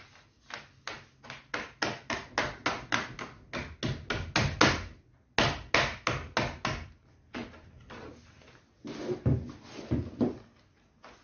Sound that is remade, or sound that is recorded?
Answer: recorded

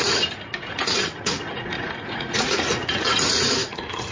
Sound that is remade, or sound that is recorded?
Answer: remade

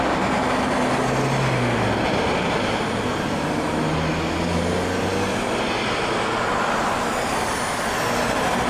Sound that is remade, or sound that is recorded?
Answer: recorded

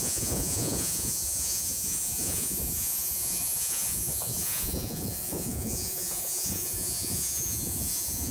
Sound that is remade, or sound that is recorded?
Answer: remade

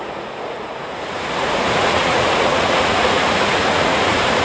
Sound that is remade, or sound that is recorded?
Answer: remade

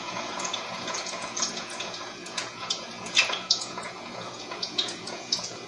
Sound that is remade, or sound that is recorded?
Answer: remade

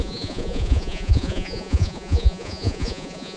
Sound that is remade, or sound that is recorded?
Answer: remade